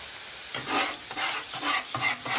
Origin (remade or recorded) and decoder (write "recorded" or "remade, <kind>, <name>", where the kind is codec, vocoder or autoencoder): recorded